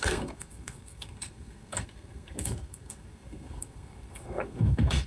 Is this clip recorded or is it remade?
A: remade